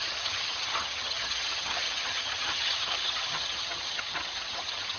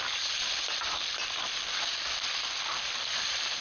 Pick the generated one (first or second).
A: first